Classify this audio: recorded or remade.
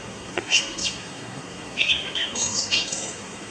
remade